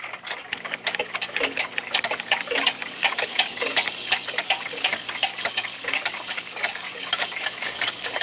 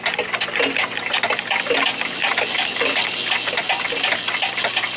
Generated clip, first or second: first